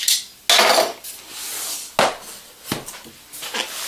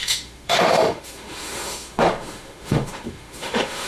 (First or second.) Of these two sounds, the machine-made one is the second